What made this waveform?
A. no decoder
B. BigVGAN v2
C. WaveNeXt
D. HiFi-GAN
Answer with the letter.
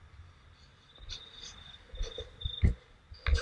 A